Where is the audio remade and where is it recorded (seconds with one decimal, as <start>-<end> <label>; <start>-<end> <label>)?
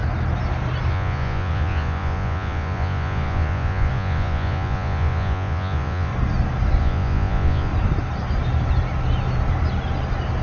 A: 0.0-0.9 recorded; 0.9-6.1 remade; 6.1-6.8 recorded; 6.8-7.7 remade; 7.7-10.4 recorded